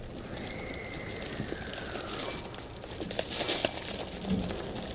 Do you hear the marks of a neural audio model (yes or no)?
no